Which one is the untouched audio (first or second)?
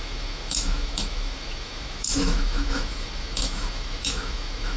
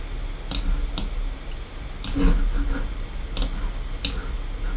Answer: second